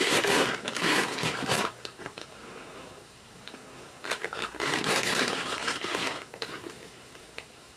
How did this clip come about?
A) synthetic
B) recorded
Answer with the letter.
A